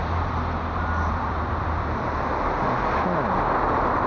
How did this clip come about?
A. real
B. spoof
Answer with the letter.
B